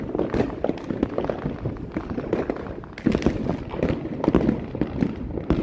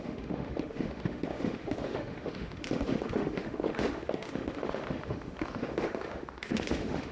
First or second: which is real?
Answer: first